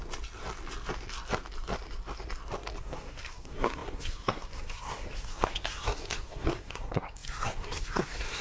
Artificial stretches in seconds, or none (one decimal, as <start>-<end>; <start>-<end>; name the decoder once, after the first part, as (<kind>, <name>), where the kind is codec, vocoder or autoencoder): 2.8-8.4 (codec, SNAC)